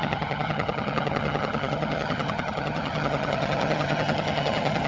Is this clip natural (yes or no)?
no